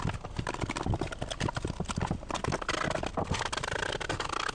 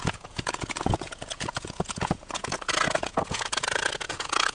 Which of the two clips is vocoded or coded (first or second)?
second